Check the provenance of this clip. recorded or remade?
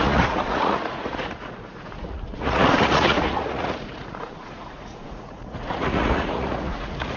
remade